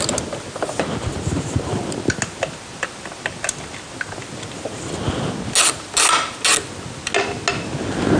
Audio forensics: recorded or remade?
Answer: recorded